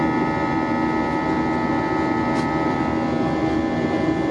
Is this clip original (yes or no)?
yes